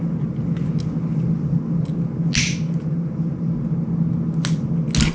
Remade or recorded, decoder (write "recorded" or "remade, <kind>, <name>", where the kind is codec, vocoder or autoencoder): recorded